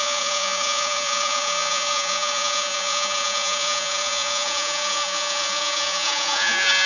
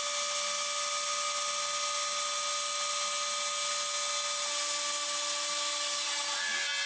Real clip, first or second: second